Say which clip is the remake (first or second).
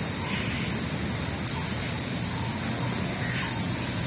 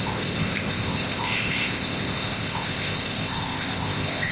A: second